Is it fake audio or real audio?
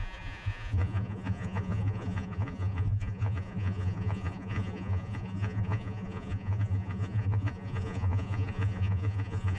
fake